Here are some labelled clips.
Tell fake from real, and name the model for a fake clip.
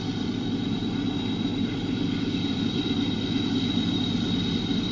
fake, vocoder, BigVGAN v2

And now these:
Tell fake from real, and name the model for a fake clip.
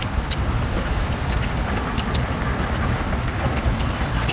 real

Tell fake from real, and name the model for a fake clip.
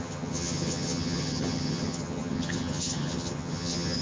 fake, vocoder, HiFi-GAN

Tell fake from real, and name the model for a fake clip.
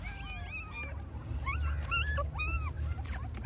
real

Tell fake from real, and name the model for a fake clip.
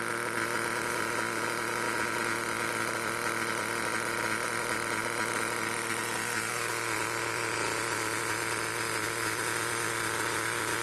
real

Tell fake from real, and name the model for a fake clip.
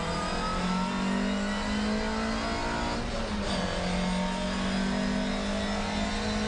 real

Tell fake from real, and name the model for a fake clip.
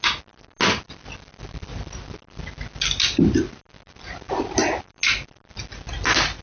real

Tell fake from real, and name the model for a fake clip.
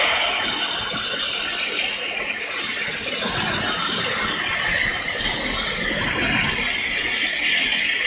real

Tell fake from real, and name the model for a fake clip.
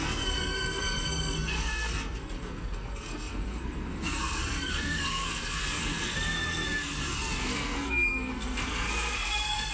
fake, codec, SNAC